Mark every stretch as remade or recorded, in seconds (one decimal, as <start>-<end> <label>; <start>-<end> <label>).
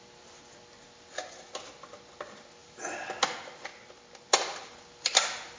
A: 0.0-5.6 recorded